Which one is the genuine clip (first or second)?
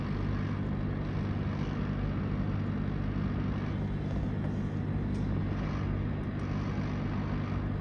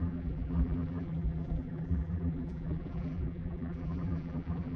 first